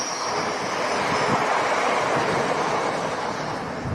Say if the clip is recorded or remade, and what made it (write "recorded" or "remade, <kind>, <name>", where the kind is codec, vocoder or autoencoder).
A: recorded